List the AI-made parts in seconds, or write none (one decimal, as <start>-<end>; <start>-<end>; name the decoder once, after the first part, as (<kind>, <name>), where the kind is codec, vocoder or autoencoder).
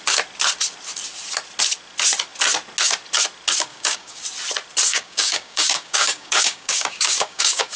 3.7-4.2 (codec, DAC); 4.9-7.8